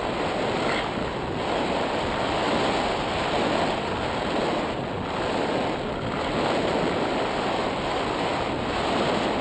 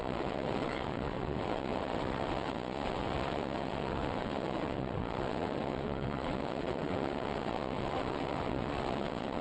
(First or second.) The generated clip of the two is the second